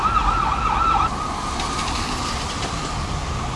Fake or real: real